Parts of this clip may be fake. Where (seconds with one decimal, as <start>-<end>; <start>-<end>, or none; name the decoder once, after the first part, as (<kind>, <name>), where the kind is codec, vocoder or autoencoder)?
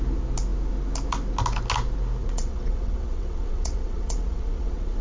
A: 2.2-5.0 (vocoder, WaveNeXt)